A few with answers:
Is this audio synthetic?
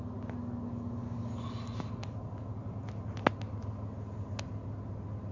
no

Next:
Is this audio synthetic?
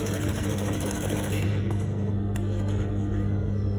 yes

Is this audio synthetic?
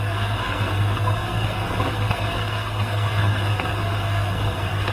yes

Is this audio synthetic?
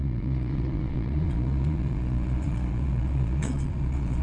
yes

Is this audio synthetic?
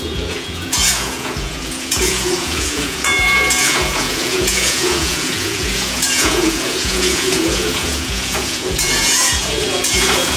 yes